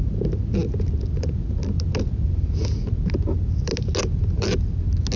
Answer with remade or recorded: recorded